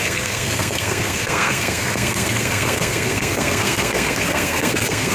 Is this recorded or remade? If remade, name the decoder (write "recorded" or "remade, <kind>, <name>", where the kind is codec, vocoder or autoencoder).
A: remade, codec, SNAC